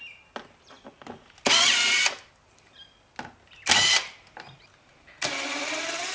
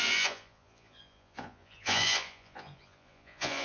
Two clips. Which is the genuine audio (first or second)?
first